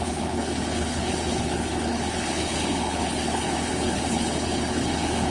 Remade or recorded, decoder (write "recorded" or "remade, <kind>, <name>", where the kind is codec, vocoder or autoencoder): remade, codec, HILCodec